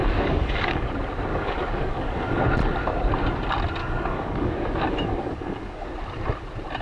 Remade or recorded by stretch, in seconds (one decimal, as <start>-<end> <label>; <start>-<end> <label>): 0.0-0.9 remade; 0.9-1.3 recorded; 1.3-2.4 remade; 2.4-3.8 recorded; 3.8-5.9 remade; 5.9-6.8 recorded